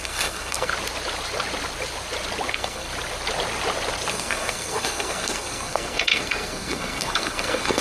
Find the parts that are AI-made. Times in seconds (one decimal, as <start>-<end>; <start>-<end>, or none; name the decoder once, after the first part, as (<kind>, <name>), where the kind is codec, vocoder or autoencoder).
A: 0.0-0.7 (codec, SNAC); 2.5-2.9; 4.1-7.8